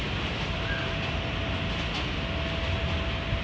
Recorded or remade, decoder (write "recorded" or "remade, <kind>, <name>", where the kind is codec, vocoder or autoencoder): recorded